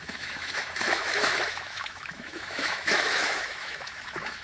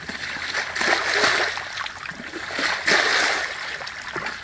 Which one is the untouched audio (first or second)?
second